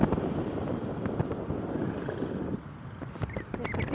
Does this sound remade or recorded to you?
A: recorded